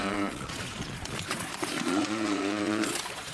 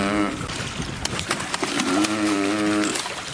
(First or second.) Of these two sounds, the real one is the second